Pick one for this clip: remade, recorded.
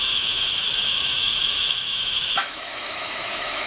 remade